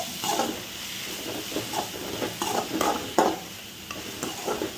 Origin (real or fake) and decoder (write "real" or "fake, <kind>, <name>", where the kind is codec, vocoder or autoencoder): real